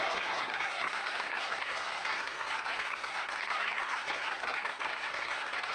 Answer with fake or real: fake